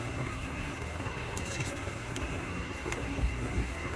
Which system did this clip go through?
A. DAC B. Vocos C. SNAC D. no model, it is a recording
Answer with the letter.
C